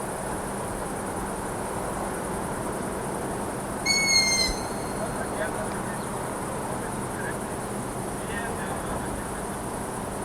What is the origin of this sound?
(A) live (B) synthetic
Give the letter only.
A